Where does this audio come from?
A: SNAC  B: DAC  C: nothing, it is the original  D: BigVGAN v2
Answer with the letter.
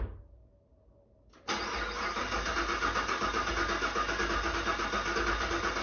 C